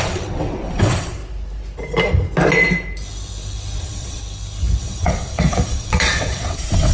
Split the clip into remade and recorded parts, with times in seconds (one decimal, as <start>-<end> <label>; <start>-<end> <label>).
0.0-1.2 remade; 1.2-3.8 recorded; 3.8-4.2 remade; 4.2-4.8 recorded; 4.8-6.9 remade